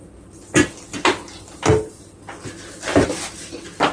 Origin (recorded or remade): recorded